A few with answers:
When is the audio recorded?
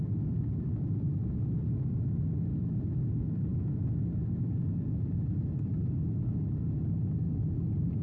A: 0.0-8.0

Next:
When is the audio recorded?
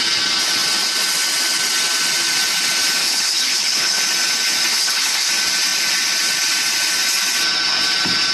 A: 0.0-3.0; 4.0-4.7; 5.3-8.3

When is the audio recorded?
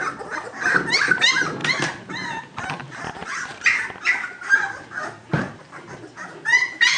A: 0.0-7.0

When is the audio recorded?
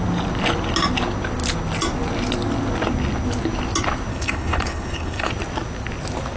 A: 0.0-4.1; 5.3-6.4